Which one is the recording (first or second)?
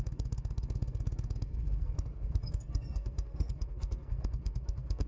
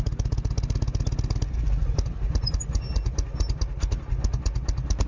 second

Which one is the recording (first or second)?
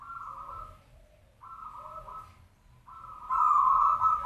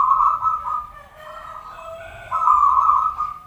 first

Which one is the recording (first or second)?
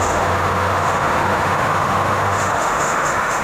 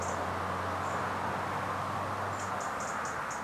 second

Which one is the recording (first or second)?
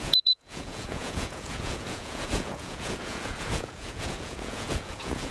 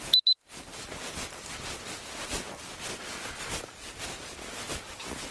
second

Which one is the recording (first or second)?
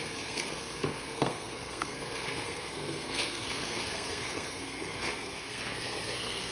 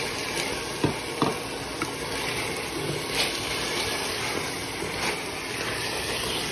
second